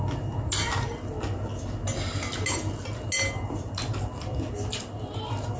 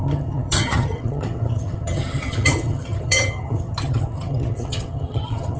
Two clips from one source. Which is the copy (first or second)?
second